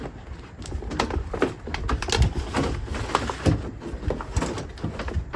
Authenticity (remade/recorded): recorded